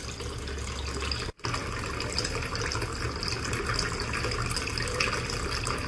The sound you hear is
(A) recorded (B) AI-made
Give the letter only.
A